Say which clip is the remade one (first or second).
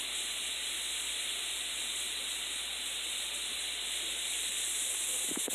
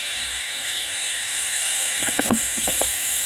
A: second